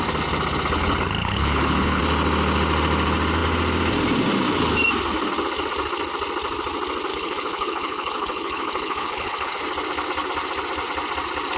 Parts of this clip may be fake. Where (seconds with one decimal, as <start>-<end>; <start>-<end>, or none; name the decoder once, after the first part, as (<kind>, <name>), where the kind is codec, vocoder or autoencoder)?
1.2-2.0 (codec, HILCodec); 7.1-9.6